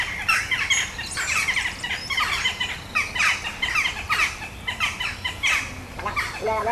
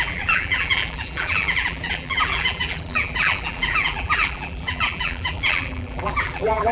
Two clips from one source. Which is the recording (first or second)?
first